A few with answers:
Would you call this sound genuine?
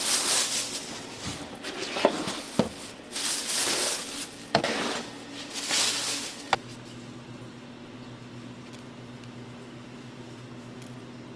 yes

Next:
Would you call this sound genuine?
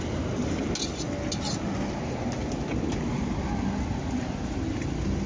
yes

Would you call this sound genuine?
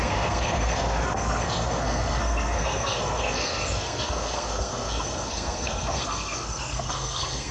no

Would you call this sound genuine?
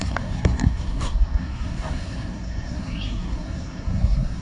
no